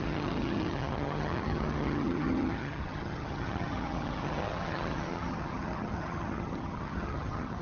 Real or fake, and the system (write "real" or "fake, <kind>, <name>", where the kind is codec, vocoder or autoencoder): fake, vocoder, HiFi-GAN